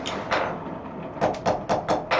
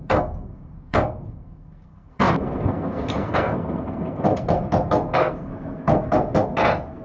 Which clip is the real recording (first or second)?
first